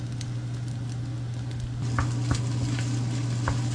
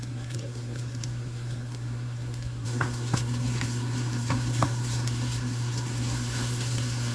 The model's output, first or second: second